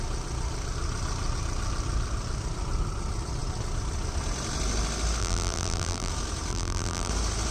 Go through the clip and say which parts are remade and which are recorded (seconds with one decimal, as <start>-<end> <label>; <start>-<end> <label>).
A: 0.0-5.2 recorded; 5.2-6.1 remade; 6.1-6.5 recorded; 6.5-7.1 remade; 7.1-7.5 recorded